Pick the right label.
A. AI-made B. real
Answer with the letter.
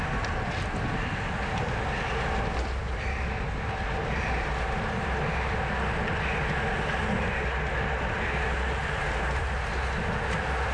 B